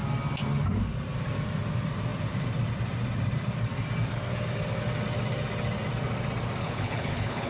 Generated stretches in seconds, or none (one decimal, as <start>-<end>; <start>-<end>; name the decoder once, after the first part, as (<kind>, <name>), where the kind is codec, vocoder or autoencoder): 6.6-7.5 (codec, HILCodec)